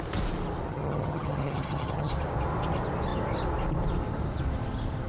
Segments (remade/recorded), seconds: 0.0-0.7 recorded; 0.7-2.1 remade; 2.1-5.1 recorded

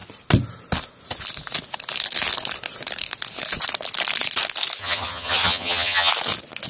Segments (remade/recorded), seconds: 0.0-4.8 recorded; 4.8-6.1 remade; 6.1-6.7 recorded

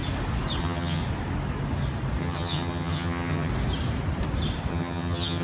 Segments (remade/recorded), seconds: 0.0-0.6 recorded; 0.6-1.0 remade; 1.0-2.2 recorded; 2.2-3.5 remade; 3.5-4.7 recorded; 4.7-5.4 remade

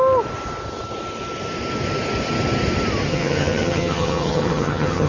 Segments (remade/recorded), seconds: 0.0-3.1 recorded; 3.1-5.1 remade